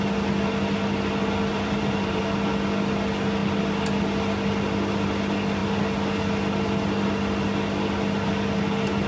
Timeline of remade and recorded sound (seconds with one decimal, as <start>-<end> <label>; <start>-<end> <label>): 0.0-1.5 recorded; 1.5-2.2 remade; 2.2-9.1 recorded